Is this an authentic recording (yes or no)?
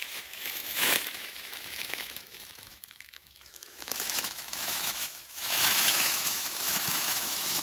no